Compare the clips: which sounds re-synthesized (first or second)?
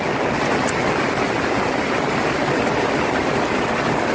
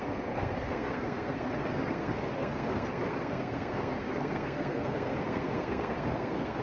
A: second